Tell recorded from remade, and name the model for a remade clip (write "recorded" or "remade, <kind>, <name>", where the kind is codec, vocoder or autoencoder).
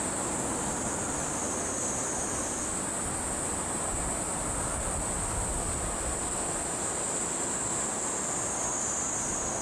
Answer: recorded